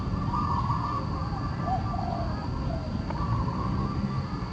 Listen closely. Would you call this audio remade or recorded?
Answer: recorded